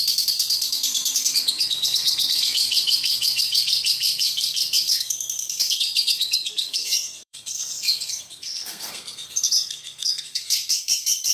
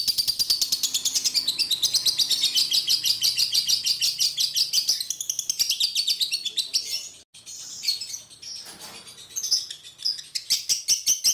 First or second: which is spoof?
first